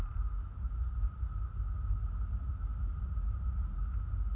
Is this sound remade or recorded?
recorded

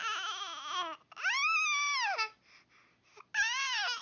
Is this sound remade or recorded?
recorded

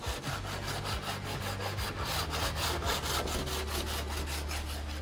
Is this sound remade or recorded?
recorded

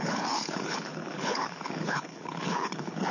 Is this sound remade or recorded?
remade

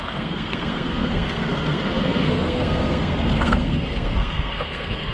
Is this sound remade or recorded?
remade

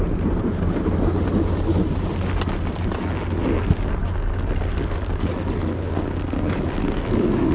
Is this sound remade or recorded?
recorded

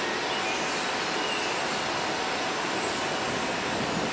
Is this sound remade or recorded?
recorded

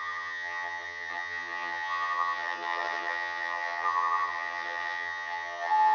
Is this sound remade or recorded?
remade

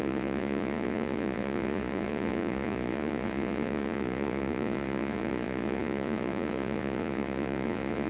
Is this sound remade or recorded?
remade